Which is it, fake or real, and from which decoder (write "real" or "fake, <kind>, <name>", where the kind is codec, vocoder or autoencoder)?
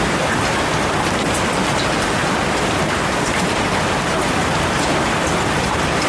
fake, vocoder, BigVGAN v2